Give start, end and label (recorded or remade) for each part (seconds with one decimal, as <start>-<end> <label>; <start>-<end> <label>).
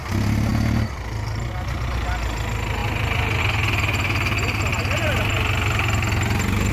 0.0-2.8 recorded; 2.8-3.4 remade; 3.4-4.7 recorded; 4.7-5.3 remade; 5.3-6.7 recorded